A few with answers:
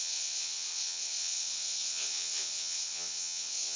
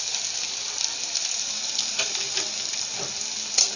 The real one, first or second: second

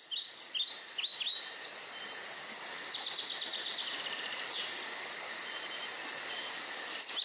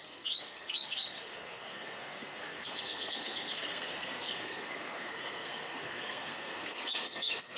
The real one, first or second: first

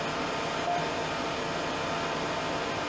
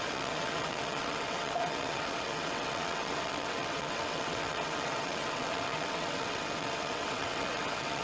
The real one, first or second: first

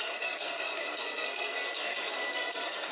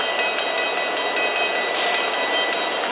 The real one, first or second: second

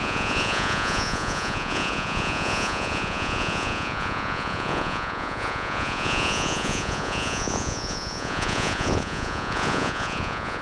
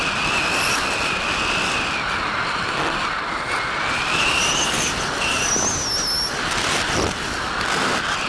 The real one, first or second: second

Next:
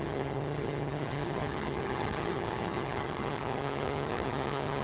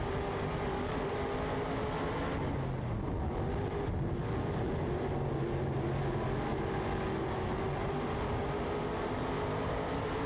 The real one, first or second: second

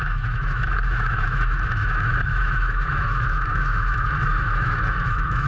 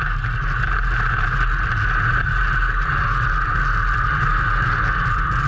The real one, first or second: second